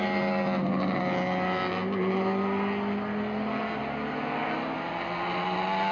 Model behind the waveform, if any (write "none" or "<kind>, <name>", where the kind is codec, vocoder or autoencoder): none